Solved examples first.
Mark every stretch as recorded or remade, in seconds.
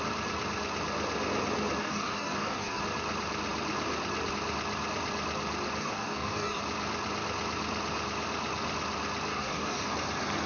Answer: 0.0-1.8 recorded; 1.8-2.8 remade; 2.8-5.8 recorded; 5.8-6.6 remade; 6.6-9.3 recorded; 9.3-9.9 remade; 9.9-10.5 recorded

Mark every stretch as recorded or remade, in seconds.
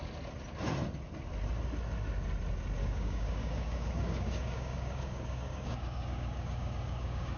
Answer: 0.0-2.8 recorded; 2.8-7.4 remade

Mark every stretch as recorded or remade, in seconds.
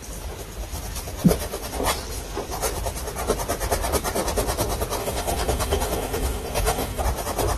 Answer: 0.0-5.0 recorded; 5.0-7.0 remade; 7.0-7.6 recorded